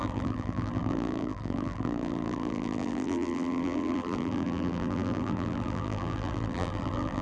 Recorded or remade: remade